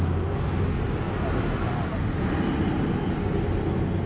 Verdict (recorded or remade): recorded